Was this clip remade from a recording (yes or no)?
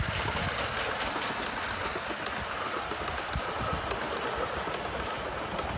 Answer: no